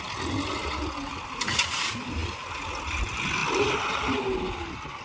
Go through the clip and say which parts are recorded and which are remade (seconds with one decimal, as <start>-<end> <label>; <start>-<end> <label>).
0.0-5.0 recorded